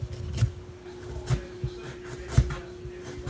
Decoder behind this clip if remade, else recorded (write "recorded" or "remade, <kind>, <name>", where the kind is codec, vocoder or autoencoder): recorded